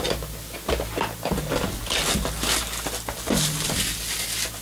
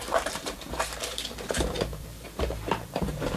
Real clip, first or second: first